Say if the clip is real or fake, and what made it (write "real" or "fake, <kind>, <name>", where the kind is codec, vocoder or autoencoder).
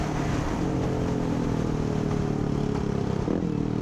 real